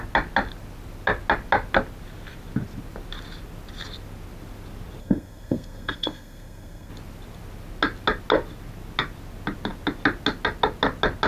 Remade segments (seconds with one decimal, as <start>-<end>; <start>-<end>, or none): 5.0-6.9